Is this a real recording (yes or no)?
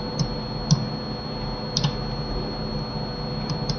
yes